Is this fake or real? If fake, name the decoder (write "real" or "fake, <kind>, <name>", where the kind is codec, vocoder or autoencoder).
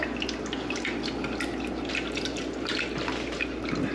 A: real